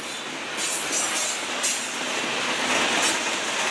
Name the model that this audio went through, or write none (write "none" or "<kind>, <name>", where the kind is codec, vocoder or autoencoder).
none